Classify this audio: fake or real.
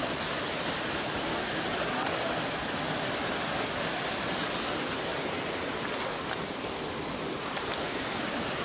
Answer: real